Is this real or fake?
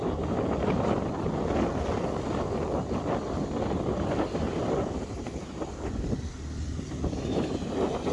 real